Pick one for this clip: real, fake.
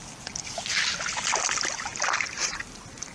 real